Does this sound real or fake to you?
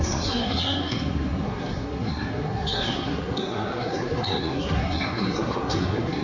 fake